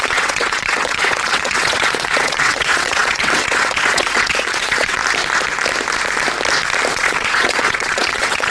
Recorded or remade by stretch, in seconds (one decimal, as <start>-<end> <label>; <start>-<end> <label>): 0.0-5.0 remade; 5.0-6.9 recorded; 6.9-8.5 remade